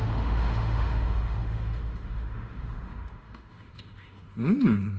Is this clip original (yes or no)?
no